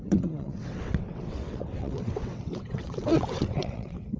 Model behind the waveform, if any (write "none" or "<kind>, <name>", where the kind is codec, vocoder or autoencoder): vocoder, WaveNeXt